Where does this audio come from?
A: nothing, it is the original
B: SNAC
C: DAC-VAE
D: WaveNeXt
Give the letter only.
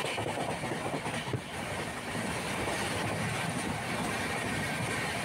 A